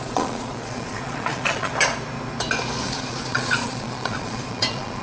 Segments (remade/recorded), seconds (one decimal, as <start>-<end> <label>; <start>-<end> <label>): 0.0-1.7 remade; 1.7-2.9 recorded; 2.9-5.0 remade